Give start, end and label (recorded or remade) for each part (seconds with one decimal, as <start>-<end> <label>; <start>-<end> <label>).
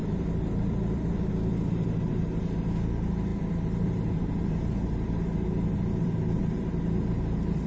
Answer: 0.0-1.3 remade; 1.3-3.3 recorded; 3.3-7.1 remade; 7.1-7.7 recorded